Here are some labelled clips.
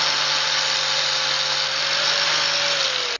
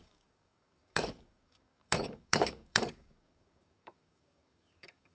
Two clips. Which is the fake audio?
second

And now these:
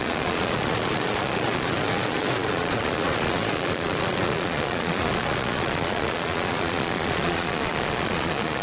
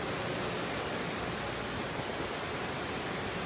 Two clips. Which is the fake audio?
first